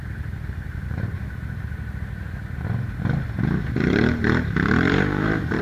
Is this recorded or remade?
remade